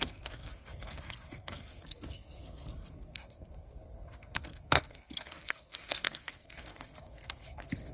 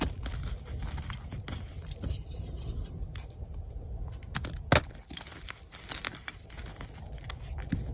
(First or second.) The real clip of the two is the second